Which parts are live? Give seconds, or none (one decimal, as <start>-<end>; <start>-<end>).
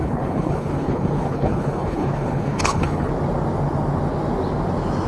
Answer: 3.1-5.1